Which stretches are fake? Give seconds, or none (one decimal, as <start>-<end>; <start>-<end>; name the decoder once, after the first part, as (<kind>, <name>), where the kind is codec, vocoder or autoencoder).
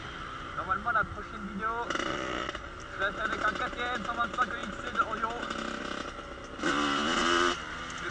2.1-2.7 (vocoder, Vocos)